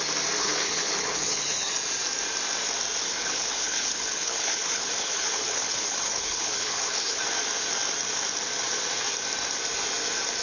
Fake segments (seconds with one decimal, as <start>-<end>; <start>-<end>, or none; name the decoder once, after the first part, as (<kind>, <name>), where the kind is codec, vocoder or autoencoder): 0.4-1.7 (codec, HILCodec); 3.0-7.2